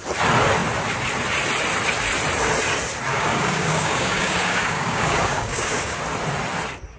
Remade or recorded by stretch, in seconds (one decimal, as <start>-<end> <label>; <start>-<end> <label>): 0.0-3.1 recorded; 3.1-6.0 remade; 6.0-7.0 recorded